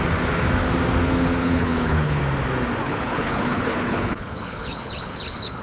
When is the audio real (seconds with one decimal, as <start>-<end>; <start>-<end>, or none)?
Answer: 0.0-1.4; 2.2-2.8